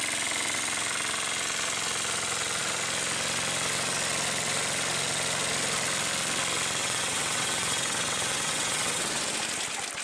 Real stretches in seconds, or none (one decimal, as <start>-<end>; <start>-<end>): 0.0-6.8; 9.2-10.0